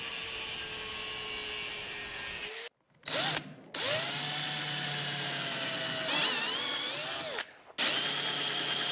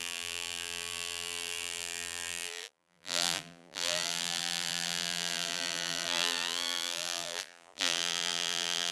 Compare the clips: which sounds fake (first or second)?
second